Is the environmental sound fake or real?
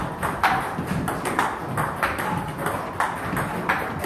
real